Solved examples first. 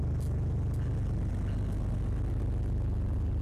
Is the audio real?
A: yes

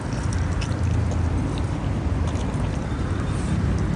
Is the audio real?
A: yes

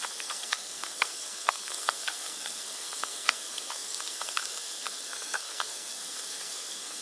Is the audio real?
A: no